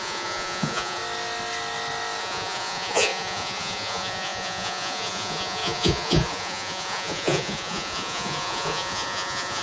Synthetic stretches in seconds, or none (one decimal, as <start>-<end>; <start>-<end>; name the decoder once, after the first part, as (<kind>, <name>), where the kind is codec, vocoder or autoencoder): 0.0-1.0 (vocoder, Vocos); 2.2-9.6